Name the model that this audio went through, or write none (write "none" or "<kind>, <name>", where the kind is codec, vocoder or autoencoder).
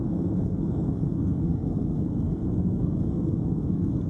codec, SNAC